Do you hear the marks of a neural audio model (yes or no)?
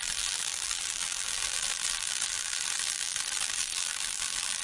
yes